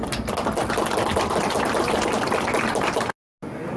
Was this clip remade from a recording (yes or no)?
no